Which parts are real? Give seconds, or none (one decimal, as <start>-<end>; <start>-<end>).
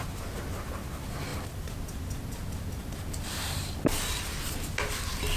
0.0-1.3; 4.5-5.4